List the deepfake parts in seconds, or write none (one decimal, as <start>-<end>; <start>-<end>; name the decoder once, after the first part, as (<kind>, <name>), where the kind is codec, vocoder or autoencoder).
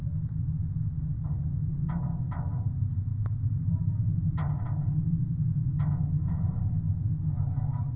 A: none